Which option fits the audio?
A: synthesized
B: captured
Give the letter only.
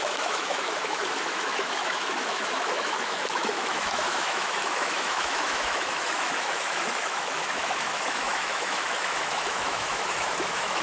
A